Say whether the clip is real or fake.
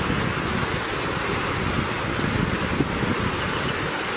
real